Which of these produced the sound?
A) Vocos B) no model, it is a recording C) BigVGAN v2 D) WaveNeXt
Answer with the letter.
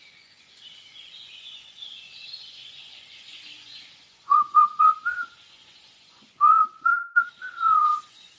A